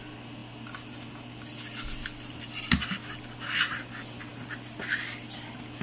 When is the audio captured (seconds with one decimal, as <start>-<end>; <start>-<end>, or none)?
0.0-5.8